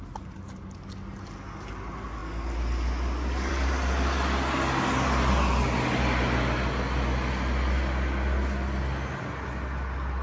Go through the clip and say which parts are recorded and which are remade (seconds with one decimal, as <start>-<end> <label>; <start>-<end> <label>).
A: 0.0-10.2 recorded